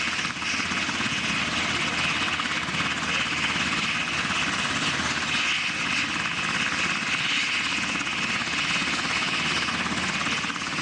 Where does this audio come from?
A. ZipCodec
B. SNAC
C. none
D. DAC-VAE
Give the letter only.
C